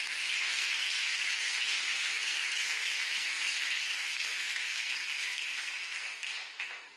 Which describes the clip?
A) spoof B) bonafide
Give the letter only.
A